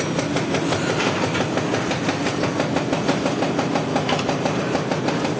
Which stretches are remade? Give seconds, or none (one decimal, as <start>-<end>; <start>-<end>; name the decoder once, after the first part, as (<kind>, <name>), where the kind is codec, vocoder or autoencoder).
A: none